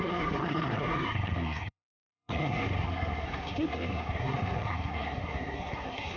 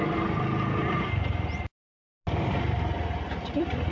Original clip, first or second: second